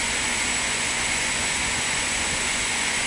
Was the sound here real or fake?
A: fake